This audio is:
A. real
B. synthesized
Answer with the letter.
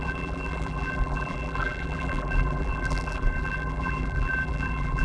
B